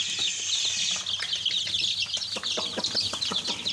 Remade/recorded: recorded